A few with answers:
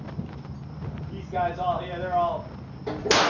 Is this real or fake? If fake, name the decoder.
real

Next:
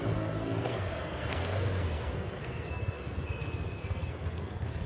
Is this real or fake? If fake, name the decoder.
fake, codec, SNAC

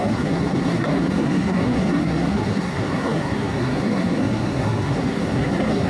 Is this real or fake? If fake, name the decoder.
fake, codec, SNAC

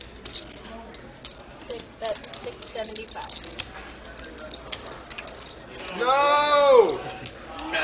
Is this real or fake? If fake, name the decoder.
real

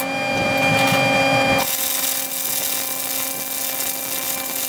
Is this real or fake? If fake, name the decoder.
real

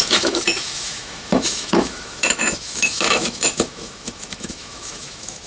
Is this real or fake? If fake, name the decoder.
fake, autoencoder, DAC-VAE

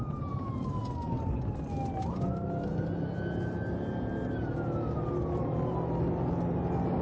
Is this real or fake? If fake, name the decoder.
real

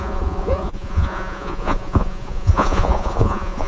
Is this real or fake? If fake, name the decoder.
fake, vocoder, Vocos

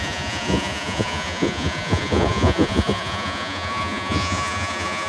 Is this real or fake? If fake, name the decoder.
fake, vocoder, Vocos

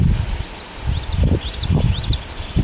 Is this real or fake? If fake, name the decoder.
real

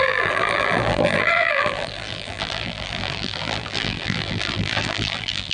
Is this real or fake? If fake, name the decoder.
fake, vocoder, BigVGAN v2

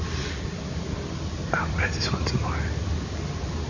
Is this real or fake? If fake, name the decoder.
real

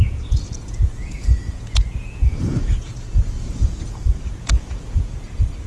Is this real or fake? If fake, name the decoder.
fake, vocoder, Vocos